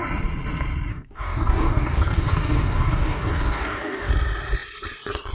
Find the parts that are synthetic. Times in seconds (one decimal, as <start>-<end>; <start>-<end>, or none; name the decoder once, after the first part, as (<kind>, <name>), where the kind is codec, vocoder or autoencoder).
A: 0.9-4.1 (codec, DAC)